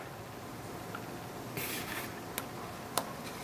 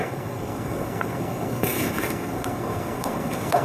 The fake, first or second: second